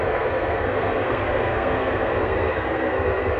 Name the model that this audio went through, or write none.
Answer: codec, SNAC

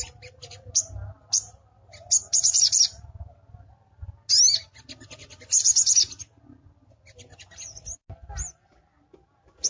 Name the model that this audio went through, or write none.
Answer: none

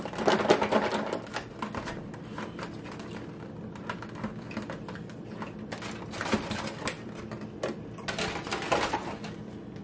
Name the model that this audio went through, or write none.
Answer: none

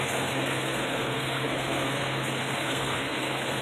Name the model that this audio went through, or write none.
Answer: codec, SNAC